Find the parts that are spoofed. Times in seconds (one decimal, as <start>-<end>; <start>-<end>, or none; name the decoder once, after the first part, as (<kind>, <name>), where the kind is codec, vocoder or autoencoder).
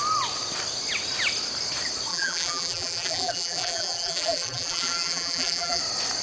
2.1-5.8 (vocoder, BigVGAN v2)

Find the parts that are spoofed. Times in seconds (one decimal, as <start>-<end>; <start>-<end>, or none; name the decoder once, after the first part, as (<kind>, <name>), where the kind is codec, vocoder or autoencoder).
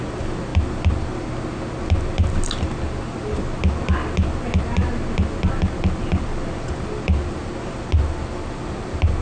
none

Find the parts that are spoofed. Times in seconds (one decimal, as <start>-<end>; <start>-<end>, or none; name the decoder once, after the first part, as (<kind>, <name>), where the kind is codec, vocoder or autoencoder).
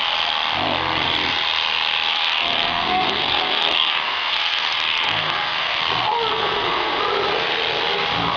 2.1-5.8 (codec, SNAC); 6.3-7.0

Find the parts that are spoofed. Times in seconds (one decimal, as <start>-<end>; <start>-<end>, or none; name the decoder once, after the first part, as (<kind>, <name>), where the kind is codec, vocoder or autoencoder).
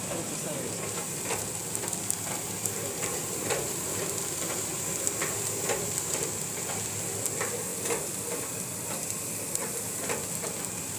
3.2-4.0 (vocoder, BigVGAN v2); 7.7-10.3